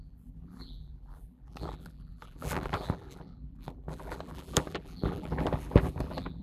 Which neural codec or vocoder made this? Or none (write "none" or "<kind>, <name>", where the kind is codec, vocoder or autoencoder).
vocoder, BigVGAN v2